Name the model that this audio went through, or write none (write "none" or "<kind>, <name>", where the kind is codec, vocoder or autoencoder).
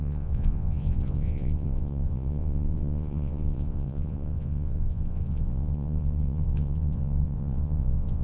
vocoder, Vocos